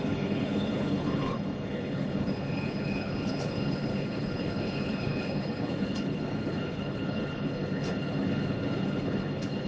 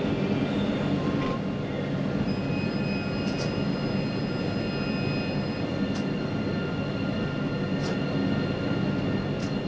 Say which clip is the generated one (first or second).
first